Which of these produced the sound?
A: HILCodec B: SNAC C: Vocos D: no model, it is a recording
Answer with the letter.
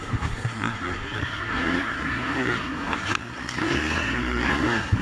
B